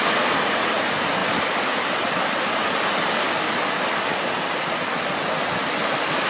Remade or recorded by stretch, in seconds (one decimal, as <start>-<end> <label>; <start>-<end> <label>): 0.0-6.3 recorded